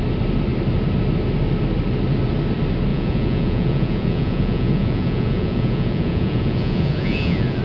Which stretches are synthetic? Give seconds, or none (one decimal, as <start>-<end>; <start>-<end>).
2.9-7.6